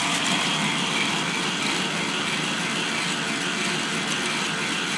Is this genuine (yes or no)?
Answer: yes